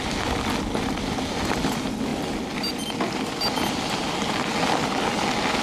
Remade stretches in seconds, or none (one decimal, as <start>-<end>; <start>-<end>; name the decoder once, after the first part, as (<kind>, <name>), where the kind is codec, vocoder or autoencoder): none